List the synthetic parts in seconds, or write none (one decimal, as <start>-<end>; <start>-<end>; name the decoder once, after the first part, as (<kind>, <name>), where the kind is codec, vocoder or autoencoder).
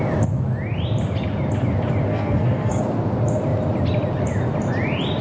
2.1-2.8 (codec, SNAC)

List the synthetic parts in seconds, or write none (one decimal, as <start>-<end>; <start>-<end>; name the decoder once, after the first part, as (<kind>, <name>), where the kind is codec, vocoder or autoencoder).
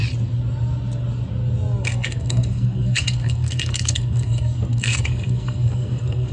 1.8-6.3 (codec, SNAC)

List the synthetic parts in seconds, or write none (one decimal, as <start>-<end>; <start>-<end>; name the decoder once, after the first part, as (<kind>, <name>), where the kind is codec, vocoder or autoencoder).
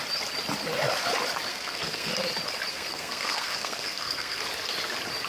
1.5-2.1 (codec, SNAC); 2.7-4.4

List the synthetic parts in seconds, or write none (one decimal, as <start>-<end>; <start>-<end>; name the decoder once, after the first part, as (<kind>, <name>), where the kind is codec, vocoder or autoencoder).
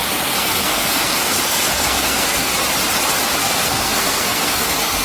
0.0-2.5 (codec, SNAC); 3.4-5.0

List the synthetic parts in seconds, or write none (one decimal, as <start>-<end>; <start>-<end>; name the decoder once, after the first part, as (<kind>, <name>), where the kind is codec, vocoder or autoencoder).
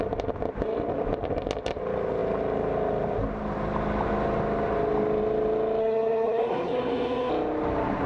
5.8-7.3 (codec, SNAC)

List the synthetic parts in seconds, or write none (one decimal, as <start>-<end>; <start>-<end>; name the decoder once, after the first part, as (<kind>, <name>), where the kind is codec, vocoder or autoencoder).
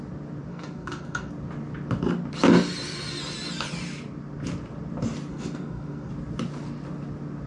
0.5-1.3 (codec, SNAC); 5.3-6.1